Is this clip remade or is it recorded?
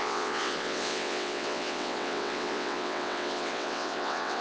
remade